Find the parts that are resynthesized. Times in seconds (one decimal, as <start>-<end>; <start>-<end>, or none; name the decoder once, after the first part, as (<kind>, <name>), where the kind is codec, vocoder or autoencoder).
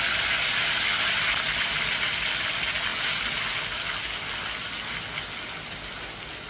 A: none